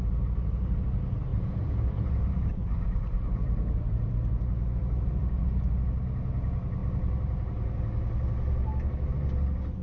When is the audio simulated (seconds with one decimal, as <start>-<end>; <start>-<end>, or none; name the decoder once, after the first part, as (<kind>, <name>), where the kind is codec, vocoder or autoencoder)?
1.3-4.1 (vocoder, BigVGAN v2)